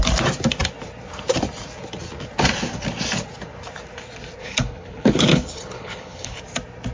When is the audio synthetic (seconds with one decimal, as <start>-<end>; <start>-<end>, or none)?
4.4-6.4